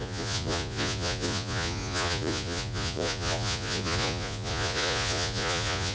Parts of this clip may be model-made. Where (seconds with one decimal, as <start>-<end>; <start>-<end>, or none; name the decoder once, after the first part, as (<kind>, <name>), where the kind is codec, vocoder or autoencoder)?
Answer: 0.0-5.9 (vocoder, Vocos)